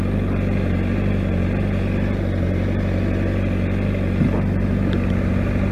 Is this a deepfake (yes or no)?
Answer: no